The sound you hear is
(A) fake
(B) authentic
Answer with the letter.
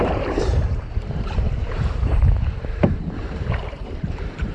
A